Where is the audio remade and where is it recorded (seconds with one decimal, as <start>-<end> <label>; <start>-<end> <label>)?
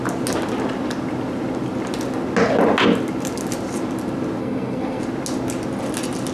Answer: 0.0-4.4 recorded; 4.4-5.0 remade; 5.0-6.3 recorded